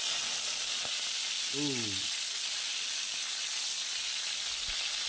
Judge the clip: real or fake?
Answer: real